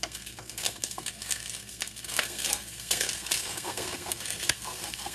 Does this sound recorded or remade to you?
remade